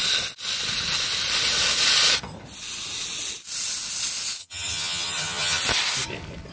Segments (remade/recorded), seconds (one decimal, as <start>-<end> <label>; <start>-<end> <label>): 0.0-4.4 recorded; 4.4-5.6 remade; 5.6-6.5 recorded